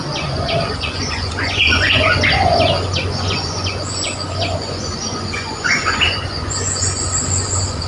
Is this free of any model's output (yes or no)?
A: no